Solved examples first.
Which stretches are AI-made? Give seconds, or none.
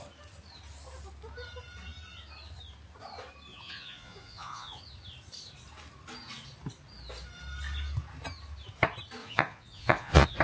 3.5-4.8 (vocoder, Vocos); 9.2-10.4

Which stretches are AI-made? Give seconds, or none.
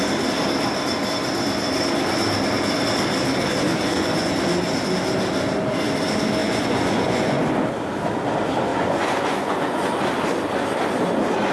3.7-4.3 (vocoder, Vocos); 6.4-7.4; 8.7-9.9